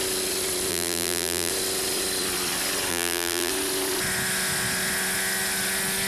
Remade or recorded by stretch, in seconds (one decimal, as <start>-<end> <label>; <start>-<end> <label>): 0.0-0.7 recorded; 0.7-1.5 remade; 1.5-2.9 recorded; 2.9-3.5 remade; 3.5-6.1 recorded